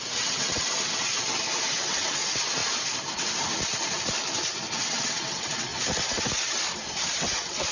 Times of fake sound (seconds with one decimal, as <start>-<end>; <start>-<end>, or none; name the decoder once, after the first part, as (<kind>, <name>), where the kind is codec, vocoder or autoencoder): 0.0-1.1 (vocoder, WaveNeXt); 1.7-2.6; 4.8-5.7; 7.2-7.7